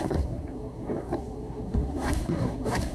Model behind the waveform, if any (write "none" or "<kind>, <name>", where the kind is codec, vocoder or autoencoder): codec, SNAC